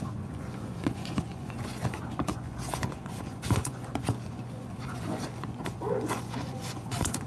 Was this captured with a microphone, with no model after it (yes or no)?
no